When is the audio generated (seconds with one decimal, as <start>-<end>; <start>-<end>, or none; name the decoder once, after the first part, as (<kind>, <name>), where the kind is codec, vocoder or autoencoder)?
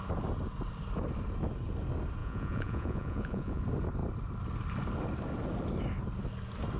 2.2-3.6 (vocoder, Vocos)